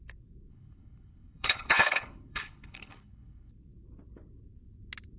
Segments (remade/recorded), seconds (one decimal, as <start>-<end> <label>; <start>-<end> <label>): 0.0-0.5 recorded; 0.5-3.5 remade; 3.5-5.2 recorded